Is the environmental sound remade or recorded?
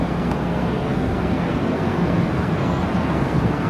remade